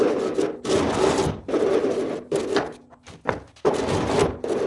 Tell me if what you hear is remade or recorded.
recorded